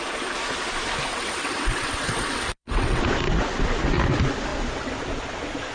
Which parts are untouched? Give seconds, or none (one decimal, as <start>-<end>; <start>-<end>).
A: 0.0-1.1; 3.0-5.7